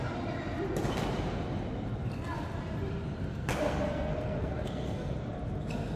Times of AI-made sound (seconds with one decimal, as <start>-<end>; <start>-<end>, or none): 3.3-5.1